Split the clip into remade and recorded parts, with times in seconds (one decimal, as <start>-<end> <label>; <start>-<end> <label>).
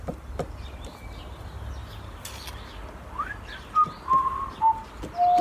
0.0-5.4 recorded